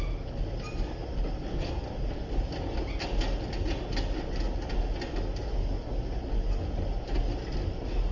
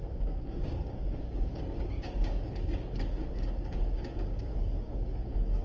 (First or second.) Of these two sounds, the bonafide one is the first